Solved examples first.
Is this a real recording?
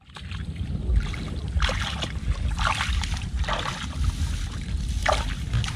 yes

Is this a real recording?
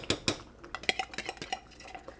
yes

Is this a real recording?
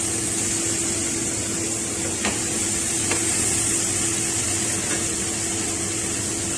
yes